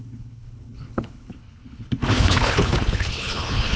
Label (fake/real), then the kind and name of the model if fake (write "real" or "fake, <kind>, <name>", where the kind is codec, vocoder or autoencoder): fake, codec, HILCodec